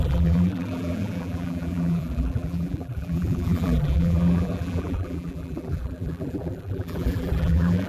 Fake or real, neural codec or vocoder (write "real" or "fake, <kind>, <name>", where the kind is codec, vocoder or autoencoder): fake, vocoder, BigVGAN v2